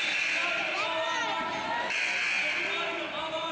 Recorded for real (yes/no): yes